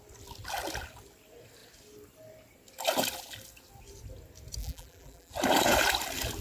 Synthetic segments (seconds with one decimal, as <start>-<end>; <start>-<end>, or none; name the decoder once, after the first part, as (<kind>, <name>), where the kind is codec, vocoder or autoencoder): 4.6-5.3 (vocoder, BigVGAN v2)